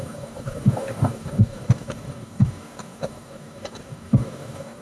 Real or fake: fake